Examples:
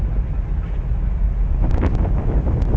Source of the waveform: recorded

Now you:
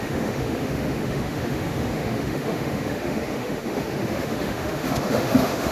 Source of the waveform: remade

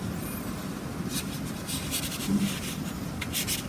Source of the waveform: recorded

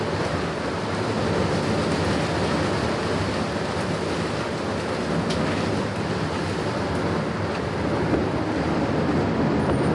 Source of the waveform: recorded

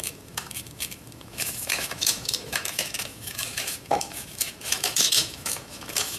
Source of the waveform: remade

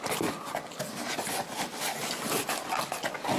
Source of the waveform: recorded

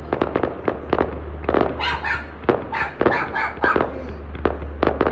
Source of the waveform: recorded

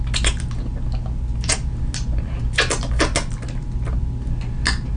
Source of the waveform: recorded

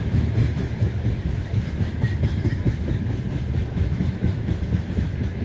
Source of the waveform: remade